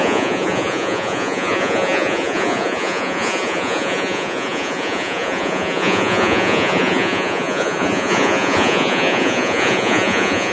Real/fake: fake